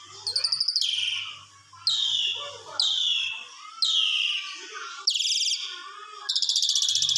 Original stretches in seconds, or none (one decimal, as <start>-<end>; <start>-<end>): 0.0-7.2

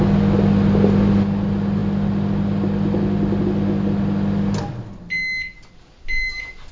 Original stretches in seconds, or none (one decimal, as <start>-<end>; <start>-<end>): 0.0-6.7

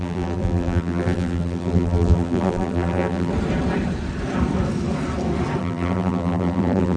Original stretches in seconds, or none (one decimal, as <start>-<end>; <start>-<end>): 3.3-5.6

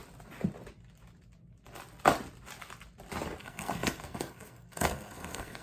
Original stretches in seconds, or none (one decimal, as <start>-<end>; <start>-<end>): 0.0-3.4

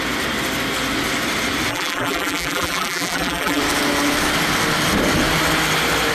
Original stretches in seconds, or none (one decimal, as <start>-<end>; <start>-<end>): 0.0-1.7; 3.6-6.1